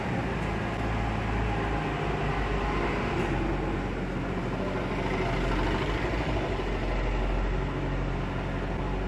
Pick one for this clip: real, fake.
real